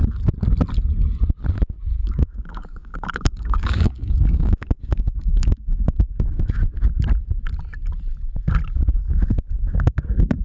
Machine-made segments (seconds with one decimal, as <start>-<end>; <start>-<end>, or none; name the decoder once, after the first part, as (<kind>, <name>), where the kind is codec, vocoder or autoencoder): 2.0-6.2 (codec, DAC); 9.1-10.4